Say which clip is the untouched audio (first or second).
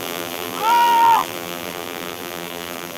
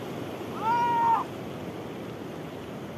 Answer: second